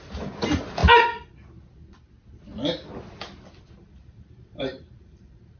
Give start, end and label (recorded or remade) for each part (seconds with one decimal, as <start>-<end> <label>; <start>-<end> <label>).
0.0-0.8 remade; 0.8-3.7 recorded; 3.7-5.6 remade